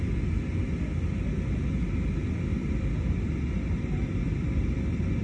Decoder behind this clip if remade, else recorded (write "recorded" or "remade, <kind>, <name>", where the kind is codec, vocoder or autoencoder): recorded